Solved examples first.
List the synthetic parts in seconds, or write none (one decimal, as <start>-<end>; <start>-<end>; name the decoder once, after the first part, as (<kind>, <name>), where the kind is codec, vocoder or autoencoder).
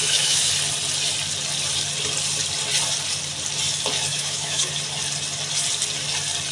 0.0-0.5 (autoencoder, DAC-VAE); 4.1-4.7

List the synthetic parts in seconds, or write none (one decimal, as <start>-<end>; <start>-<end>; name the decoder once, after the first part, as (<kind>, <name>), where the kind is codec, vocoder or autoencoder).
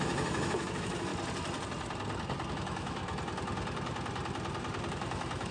0.0-1.1 (autoencoder, DAC-VAE); 2.5-3.0; 4.9-5.5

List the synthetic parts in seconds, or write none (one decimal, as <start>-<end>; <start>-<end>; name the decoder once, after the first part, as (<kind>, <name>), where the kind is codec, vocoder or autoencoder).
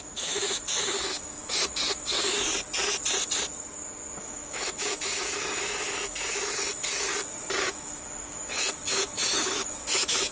0.0-2.5 (autoencoder, DAC-VAE); 4.2-7.1; 7.6-10.3